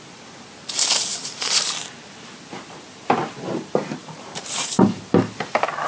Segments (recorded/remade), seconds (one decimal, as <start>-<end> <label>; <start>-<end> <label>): 0.0-1.1 recorded; 1.1-1.6 remade; 1.6-4.0 recorded; 4.0-5.0 remade; 5.0-5.9 recorded